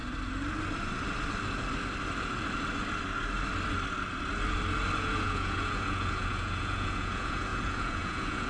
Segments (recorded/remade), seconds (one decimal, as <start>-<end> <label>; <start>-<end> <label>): 0.0-5.0 recorded; 5.0-8.5 remade

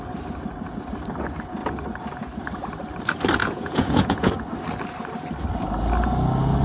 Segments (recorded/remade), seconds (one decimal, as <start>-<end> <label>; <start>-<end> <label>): 0.0-3.4 recorded; 3.4-4.3 remade; 4.3-6.6 recorded

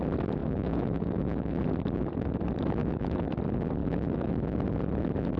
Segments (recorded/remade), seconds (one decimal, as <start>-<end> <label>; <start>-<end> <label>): 0.0-0.4 recorded; 0.4-1.6 remade; 1.6-2.8 recorded; 2.8-3.4 remade; 3.4-3.8 recorded; 3.8-4.3 remade; 4.3-5.4 recorded

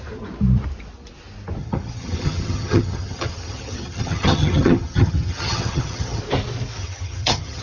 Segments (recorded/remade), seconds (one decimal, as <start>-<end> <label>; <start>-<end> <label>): 0.0-1.6 recorded; 1.6-6.2 remade; 6.2-6.8 recorded; 6.8-7.6 remade